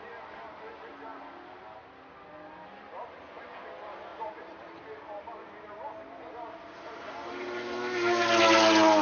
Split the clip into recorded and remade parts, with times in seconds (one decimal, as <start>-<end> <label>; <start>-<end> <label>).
0.0-9.0 recorded